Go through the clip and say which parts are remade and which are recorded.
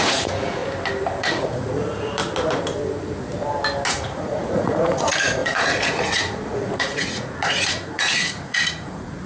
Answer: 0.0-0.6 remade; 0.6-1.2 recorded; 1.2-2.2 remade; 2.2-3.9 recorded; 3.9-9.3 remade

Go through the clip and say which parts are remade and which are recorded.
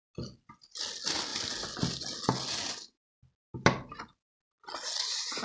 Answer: 0.0-5.4 recorded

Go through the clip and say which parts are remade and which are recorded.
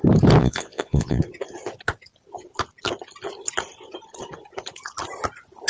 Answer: 0.0-0.4 recorded; 0.4-1.2 remade; 1.2-5.7 recorded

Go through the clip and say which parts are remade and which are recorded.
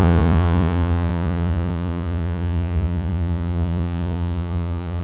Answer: 0.0-5.0 remade